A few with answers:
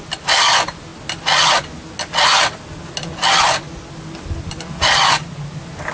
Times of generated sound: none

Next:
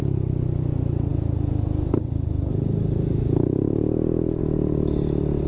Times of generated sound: none

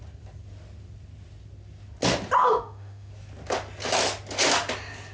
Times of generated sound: 2.4-3.1 (autoencoder, DAC-VAE)

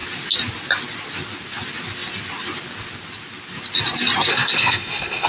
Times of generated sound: 4.3-5.3 (codec, SNAC)

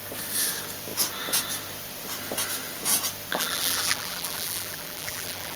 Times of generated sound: 3.3-5.6 (vocoder, BigVGAN v2)